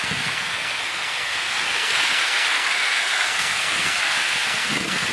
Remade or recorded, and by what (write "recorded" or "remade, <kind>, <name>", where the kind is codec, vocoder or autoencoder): remade, codec, SNAC